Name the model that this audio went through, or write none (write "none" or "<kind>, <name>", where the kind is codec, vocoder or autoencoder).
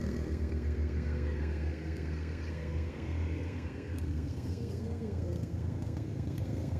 codec, SNAC